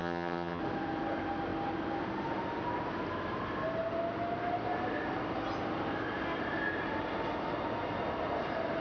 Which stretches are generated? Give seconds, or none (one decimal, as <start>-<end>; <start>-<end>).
0.0-0.6